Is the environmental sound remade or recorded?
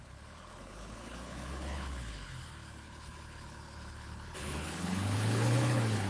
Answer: remade